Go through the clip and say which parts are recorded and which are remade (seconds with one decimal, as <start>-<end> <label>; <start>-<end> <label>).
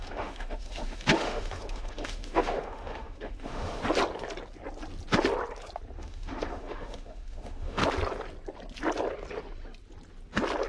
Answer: 0.0-3.8 remade; 3.8-6.0 recorded; 6.0-7.8 remade; 7.8-10.7 recorded